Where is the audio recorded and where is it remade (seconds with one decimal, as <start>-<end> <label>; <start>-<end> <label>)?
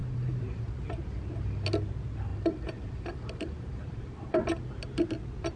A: 0.0-0.6 remade; 0.6-2.3 recorded; 2.3-4.6 remade; 4.6-5.6 recorded